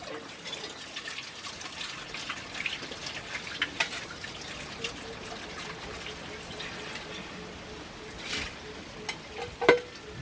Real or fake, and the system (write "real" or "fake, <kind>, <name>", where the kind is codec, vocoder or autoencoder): real